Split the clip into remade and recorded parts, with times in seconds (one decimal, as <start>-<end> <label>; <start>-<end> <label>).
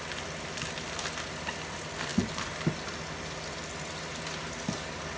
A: 0.0-5.2 recorded